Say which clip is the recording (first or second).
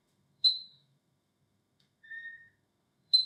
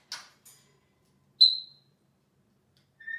second